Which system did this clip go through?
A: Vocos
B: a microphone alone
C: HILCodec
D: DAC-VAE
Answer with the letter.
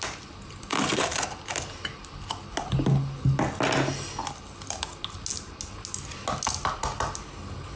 B